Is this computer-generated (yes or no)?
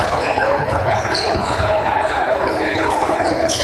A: yes